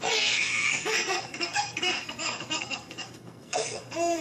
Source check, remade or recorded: remade